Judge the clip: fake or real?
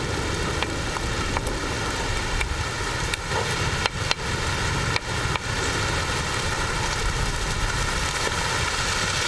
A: real